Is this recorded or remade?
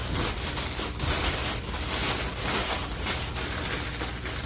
recorded